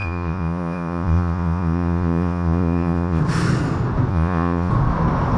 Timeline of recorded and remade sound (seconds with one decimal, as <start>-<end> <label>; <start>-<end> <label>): 0.0-3.2 remade; 3.2-4.1 recorded; 4.1-4.7 remade; 4.7-5.4 recorded